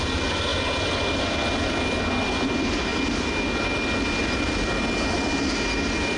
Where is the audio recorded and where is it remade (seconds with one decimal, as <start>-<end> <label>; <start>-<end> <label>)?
0.0-6.2 recorded